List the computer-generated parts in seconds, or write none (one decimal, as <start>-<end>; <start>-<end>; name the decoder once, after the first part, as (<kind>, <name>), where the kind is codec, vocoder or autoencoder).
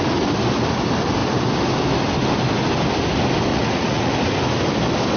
3.5-4.1 (vocoder, Vocos)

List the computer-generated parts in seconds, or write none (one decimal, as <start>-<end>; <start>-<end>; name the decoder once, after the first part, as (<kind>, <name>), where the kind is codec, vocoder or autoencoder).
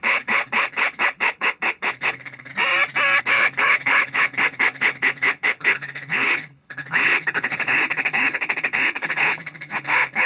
0.0-2.5 (codec, HILCodec); 3.2-10.3